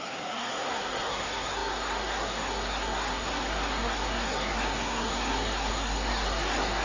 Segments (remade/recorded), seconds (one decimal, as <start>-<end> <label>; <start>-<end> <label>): 0.0-6.8 remade